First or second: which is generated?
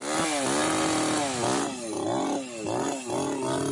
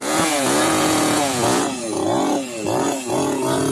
second